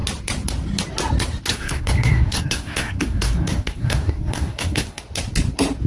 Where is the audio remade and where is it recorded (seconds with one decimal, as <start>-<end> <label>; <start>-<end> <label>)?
0.0-1.5 recorded; 1.5-5.0 remade; 5.0-5.9 recorded